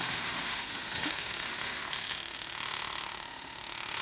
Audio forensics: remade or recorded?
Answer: remade